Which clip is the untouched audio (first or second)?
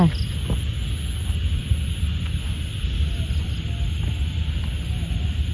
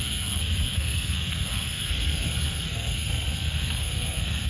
first